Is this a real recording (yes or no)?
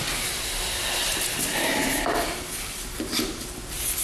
yes